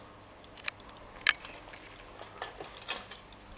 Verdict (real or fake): real